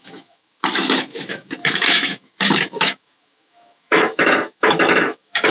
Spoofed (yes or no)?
yes